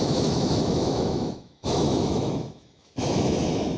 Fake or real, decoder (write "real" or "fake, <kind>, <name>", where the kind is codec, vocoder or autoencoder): fake, autoencoder, DAC-VAE